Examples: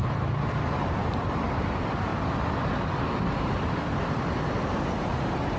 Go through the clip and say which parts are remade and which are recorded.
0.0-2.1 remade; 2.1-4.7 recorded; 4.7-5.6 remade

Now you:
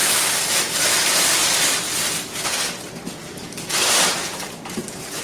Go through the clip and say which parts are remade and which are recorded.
0.0-0.6 recorded; 0.6-1.4 remade; 1.4-3.5 recorded; 3.5-5.2 remade

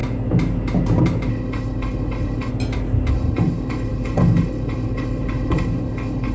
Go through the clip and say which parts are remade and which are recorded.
0.0-1.3 recorded; 1.3-2.5 remade; 2.5-3.1 recorded; 3.1-6.3 remade

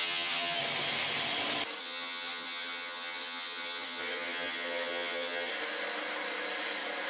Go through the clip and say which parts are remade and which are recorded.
0.0-0.6 remade; 0.6-1.8 recorded; 1.8-5.5 remade; 5.5-7.1 recorded

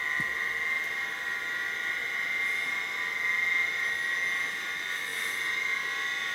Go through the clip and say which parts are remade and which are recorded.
0.0-6.3 recorded

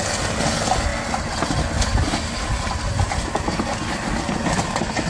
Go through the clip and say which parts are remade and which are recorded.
0.0-5.1 recorded

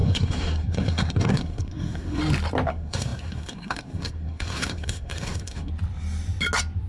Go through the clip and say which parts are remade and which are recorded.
0.0-2.2 remade; 2.2-2.7 recorded; 2.7-5.7 remade; 5.7-6.9 recorded

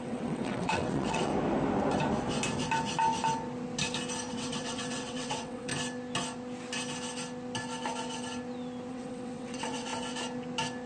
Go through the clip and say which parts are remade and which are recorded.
0.0-1.3 remade; 1.3-4.3 recorded; 4.3-5.7 remade; 5.7-8.9 recorded; 8.9-9.9 remade; 9.9-10.9 recorded